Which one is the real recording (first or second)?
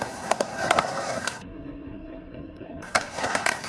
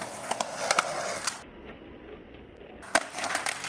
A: second